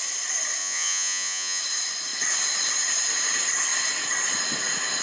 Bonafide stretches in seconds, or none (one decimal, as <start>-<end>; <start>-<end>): 0.0-0.6; 1.6-5.0